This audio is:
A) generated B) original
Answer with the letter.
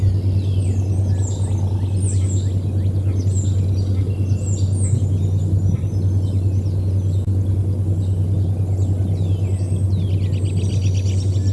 B